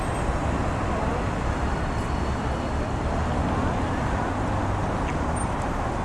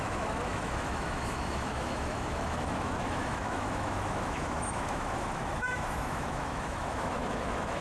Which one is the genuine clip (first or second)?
first